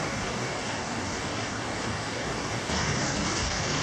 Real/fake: fake